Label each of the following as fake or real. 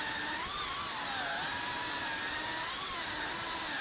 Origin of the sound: real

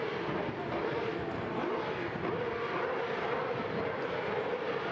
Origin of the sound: real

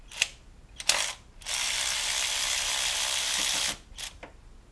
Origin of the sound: real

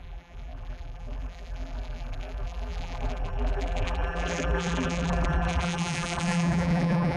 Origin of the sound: fake